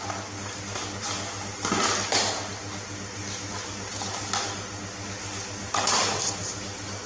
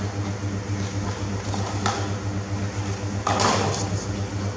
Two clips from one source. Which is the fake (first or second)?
second